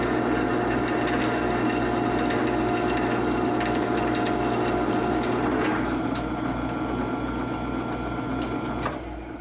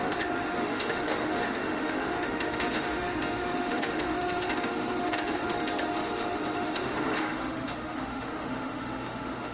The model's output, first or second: second